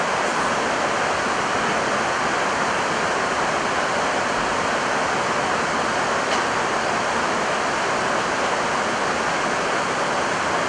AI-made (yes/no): no